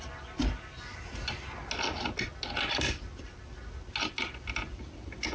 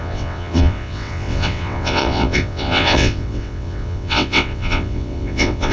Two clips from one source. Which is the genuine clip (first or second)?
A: first